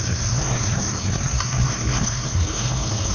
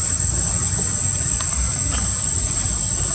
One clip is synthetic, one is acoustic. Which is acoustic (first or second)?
second